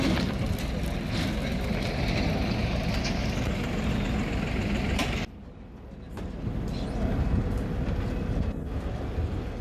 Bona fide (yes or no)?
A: yes